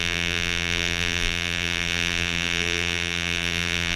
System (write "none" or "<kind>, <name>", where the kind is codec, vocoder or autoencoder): vocoder, BigVGAN v2